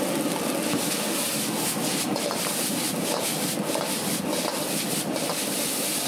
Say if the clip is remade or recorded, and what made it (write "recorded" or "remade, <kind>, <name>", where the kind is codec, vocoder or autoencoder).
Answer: recorded